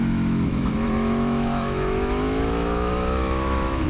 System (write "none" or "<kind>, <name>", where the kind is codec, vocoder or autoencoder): autoencoder, DAC-VAE